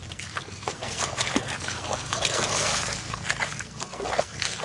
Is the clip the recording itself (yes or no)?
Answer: no